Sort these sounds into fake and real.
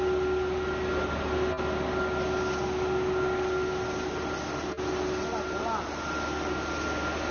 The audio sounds real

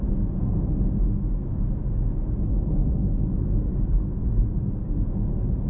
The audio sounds real